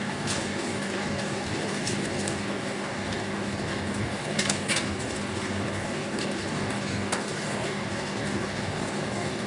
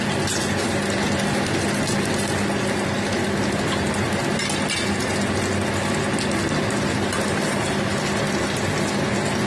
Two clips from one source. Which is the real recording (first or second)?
second